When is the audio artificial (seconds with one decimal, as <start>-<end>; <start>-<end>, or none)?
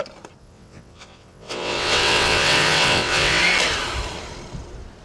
0.4-3.4